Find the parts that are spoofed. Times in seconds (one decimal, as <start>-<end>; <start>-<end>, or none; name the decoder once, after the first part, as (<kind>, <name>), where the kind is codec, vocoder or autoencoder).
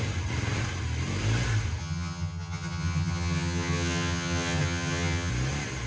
1.8-5.3 (vocoder, HiFi-GAN)